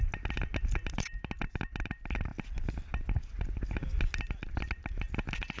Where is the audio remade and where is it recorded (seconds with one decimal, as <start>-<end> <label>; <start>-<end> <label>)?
0.0-5.6 recorded